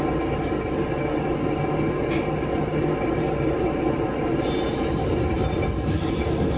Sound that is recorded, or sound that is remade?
recorded